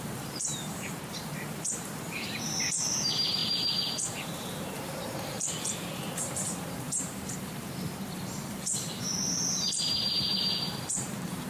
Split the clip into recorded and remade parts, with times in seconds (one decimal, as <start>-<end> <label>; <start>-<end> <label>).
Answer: 0.0-11.5 remade